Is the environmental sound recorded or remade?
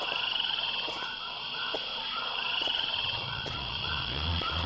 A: remade